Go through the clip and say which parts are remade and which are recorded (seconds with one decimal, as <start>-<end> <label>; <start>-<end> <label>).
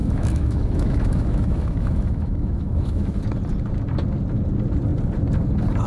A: 0.0-3.2 remade; 3.2-5.9 recorded